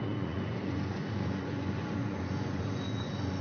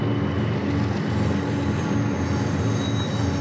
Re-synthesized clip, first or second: first